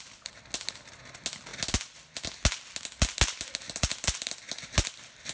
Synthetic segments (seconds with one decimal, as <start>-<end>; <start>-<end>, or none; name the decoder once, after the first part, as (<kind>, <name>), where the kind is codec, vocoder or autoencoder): none